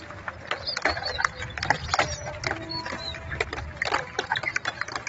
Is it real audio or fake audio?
real